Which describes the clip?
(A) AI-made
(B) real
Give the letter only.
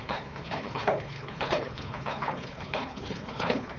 A